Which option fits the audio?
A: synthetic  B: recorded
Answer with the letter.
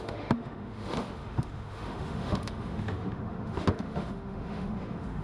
A